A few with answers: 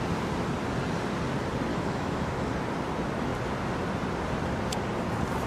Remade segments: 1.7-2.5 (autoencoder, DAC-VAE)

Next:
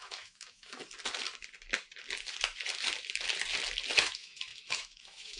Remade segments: 0.0-0.8 (autoencoder, DAC-VAE); 4.0-5.4

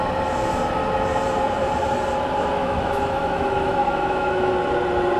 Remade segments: 2.6-4.5 (autoencoder, DAC-VAE)

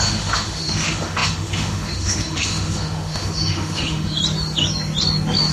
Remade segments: 0.0-4.2 (autoencoder, DAC-VAE)

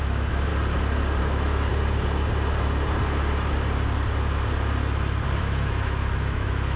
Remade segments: 0.0-0.5 (autoencoder, DAC-VAE); 1.2-1.7; 5.4-6.8